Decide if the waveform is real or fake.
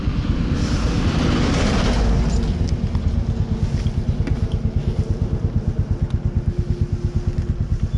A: real